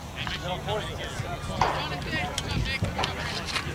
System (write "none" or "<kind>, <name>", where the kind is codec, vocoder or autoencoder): none